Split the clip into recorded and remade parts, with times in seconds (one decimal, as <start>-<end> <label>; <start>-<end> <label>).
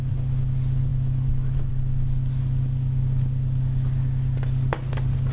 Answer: 0.0-5.3 recorded